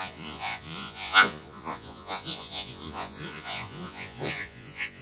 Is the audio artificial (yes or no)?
yes